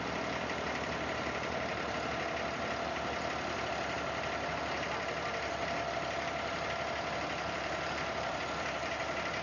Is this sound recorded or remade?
recorded